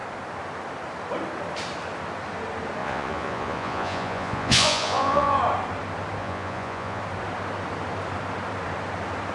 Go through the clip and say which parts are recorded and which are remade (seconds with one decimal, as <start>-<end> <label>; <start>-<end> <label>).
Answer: 0.0-2.8 recorded; 2.8-5.4 remade; 5.4-6.2 recorded; 6.2-7.0 remade; 7.0-9.3 recorded